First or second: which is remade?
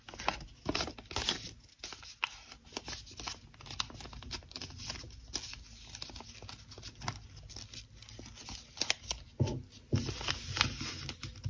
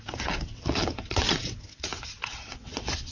second